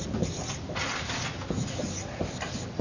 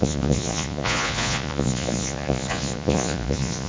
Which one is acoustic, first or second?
first